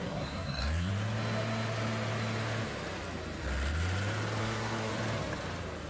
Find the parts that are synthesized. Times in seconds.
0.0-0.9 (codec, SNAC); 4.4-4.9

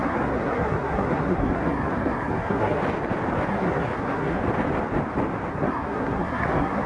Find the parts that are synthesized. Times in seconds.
0.0-2.8 (codec, SNAC); 3.5-4.4; 5.5-6.9

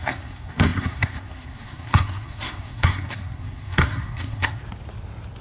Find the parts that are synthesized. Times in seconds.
0.0-4.6 (codec, SNAC)

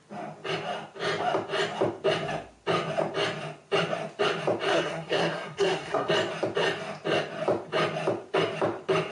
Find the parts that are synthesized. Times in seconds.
4.7-6.1 (codec, SNAC)

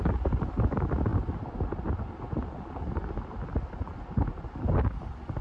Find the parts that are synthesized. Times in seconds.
none